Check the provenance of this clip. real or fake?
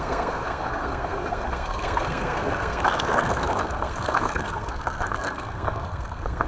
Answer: fake